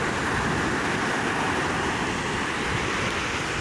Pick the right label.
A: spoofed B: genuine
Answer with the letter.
B